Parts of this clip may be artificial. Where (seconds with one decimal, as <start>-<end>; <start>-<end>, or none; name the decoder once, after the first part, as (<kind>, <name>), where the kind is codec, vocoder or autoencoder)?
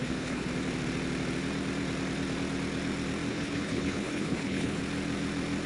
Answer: 0.0-0.5 (codec, HILCodec); 3.3-4.8